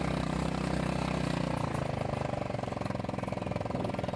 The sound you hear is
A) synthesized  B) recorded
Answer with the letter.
B